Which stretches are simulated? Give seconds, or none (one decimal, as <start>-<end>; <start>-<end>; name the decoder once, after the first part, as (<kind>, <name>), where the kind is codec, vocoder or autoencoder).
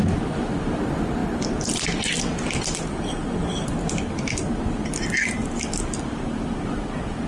none